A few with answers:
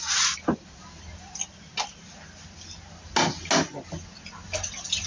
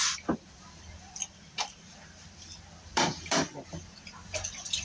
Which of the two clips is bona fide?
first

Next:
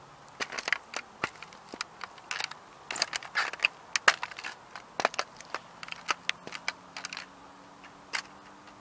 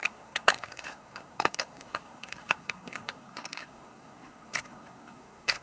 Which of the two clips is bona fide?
first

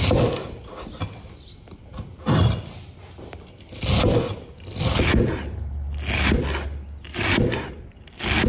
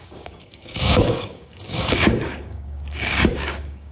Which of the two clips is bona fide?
first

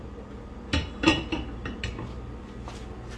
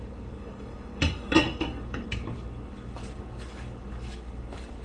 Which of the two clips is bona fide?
first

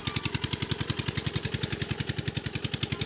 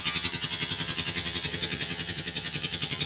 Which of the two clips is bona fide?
first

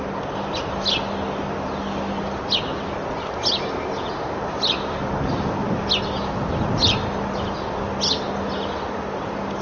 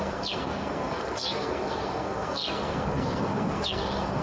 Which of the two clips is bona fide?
first